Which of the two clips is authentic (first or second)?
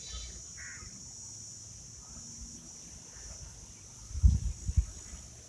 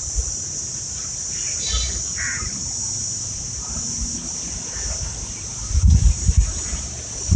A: first